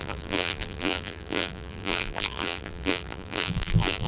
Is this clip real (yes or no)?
no